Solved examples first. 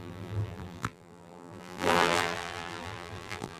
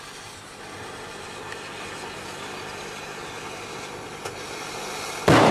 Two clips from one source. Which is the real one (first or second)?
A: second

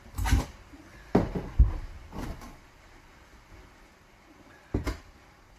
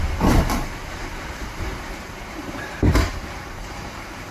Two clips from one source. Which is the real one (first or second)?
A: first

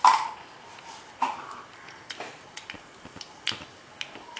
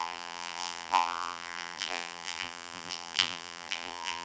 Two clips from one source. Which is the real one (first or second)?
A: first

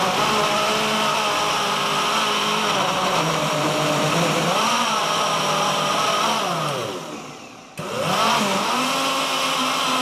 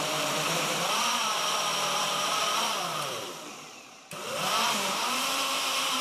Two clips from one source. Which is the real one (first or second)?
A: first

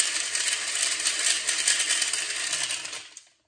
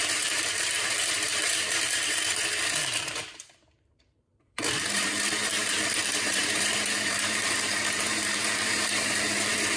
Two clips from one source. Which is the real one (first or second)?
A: first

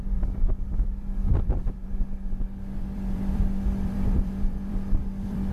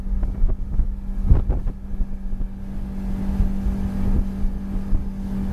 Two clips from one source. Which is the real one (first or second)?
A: second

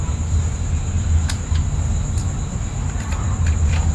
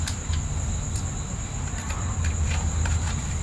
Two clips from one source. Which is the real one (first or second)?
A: second